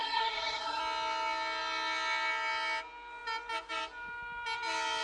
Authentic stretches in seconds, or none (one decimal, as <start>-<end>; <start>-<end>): 0.8-5.0